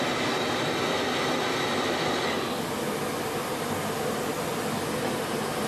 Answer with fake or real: real